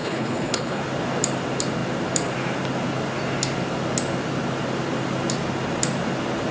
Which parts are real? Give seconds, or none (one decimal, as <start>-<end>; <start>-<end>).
0.8-6.5